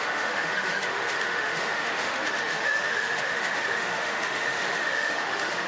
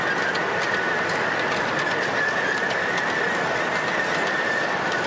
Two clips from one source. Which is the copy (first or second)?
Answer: first